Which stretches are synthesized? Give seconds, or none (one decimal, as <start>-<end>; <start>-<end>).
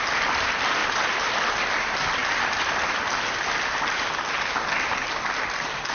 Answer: 0.8-1.3